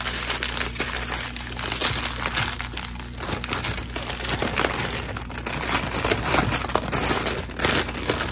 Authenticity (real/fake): real